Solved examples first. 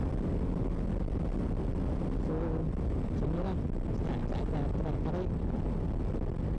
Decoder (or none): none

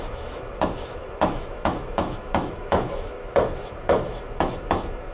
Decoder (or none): autoencoder, DAC-VAE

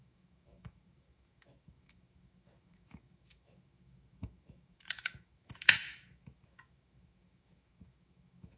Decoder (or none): autoencoder, DAC-VAE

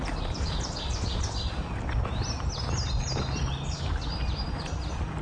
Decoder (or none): none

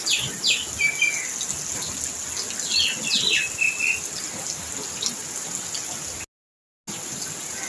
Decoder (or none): none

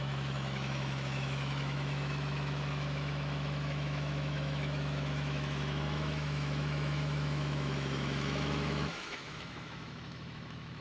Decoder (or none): autoencoder, DAC-VAE